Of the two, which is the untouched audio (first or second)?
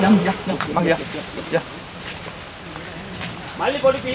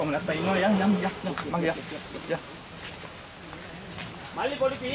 second